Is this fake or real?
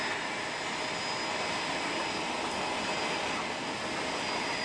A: real